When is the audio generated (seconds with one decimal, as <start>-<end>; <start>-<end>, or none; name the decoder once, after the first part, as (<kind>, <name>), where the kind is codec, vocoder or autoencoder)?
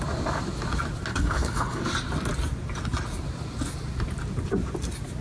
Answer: 1.1-1.8 (codec, HILCodec)